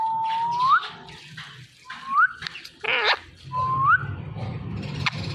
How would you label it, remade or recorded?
recorded